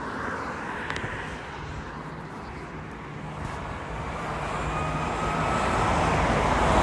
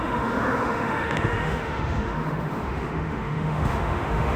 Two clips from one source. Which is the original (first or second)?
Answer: first